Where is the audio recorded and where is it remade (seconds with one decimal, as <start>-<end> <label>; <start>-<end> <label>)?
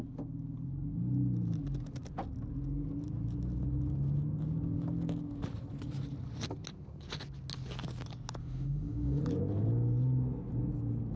0.0-8.4 recorded; 8.4-9.2 remade; 9.2-11.2 recorded